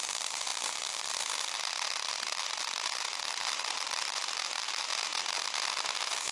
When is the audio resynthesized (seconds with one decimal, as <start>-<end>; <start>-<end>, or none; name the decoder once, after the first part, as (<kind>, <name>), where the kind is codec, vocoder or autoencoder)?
0.0-4.9 (vocoder, BigVGAN v2)